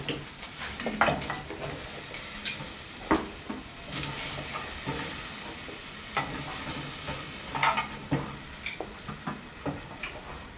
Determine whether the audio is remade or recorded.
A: recorded